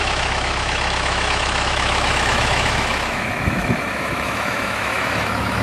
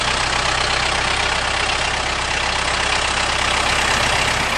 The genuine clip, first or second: second